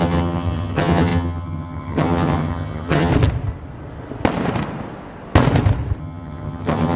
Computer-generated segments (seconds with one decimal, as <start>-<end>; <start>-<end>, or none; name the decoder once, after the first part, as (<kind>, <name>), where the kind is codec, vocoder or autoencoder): 0.0-3.1 (vocoder, HiFi-GAN); 6.0-7.0